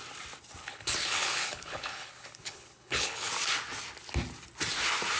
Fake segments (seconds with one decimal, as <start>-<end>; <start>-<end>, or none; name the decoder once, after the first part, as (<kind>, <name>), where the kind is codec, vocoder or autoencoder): 0.6-3.3 (codec, HILCodec)